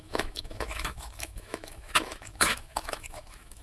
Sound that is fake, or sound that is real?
fake